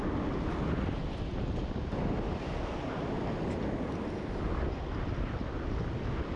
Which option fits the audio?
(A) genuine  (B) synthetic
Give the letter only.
A